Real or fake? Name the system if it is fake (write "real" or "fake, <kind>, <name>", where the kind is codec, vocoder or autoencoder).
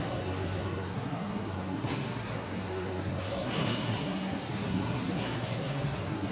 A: fake, codec, SNAC